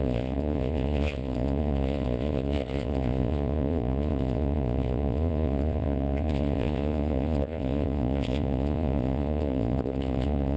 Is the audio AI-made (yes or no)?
yes